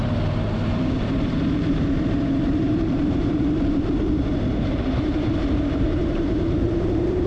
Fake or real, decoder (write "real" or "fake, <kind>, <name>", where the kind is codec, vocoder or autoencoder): fake, vocoder, BigVGAN v2